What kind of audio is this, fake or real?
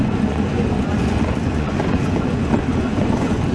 fake